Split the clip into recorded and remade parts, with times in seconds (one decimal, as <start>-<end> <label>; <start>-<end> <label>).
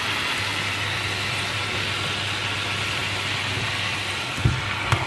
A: 0.0-5.1 recorded